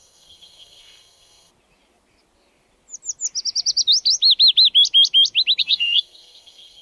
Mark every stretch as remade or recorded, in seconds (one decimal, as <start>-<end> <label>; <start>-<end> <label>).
0.0-1.5 remade; 1.5-5.6 recorded; 5.6-6.8 remade

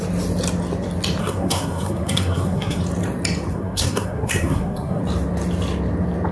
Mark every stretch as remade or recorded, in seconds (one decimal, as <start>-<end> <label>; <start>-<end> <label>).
0.0-1.2 recorded; 1.2-2.8 remade; 2.8-3.5 recorded; 3.5-5.0 remade; 5.0-6.3 recorded

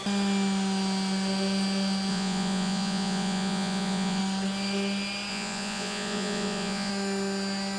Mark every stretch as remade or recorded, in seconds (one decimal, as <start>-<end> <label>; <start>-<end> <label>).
0.0-2.1 recorded; 2.1-4.2 remade; 4.2-5.3 recorded; 5.3-6.9 remade; 6.9-7.8 recorded

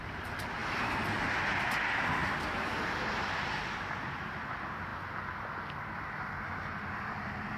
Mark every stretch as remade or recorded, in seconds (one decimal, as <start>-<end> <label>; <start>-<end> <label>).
0.0-2.2 recorded; 2.2-4.4 remade; 4.4-7.6 recorded

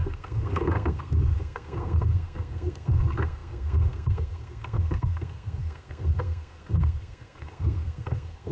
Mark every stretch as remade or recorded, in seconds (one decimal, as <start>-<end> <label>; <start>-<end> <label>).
0.0-8.5 remade

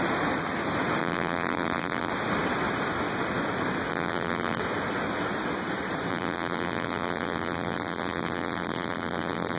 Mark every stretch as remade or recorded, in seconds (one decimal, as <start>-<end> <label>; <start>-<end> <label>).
0.0-1.0 recorded; 1.0-2.1 remade; 2.1-3.9 recorded; 3.9-4.6 remade; 4.6-6.1 recorded; 6.1-9.6 remade

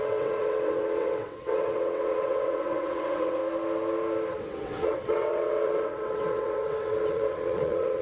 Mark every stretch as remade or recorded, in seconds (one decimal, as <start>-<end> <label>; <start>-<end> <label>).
0.0-3.4 remade; 3.4-4.4 recorded; 4.4-8.0 remade